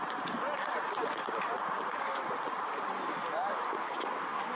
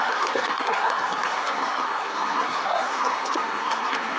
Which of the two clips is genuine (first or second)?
first